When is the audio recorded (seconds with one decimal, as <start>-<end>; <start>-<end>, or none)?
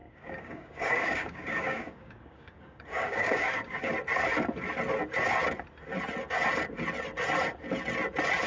3.9-8.5